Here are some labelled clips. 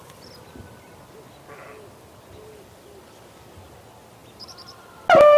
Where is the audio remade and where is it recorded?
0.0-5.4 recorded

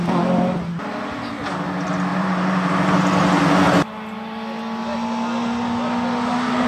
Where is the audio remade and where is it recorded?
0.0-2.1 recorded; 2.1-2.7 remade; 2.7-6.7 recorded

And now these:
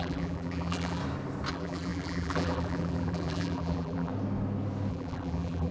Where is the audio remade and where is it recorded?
0.0-1.0 remade; 1.0-1.5 recorded; 1.5-4.1 remade; 4.1-4.9 recorded; 4.9-5.7 remade

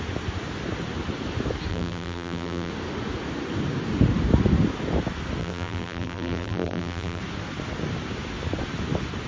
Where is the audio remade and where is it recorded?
0.0-1.7 recorded; 1.7-2.7 remade; 2.7-5.4 recorded; 5.4-7.2 remade; 7.2-9.3 recorded

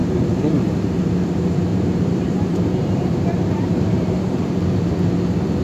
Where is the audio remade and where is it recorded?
0.0-0.7 remade; 0.7-1.7 recorded; 1.7-5.1 remade; 5.1-5.6 recorded

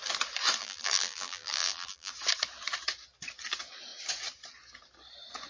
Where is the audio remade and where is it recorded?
0.0-0.6 recorded; 0.6-2.1 remade; 2.1-5.5 recorded

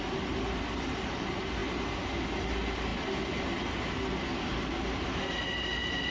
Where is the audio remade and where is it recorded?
0.0-6.1 recorded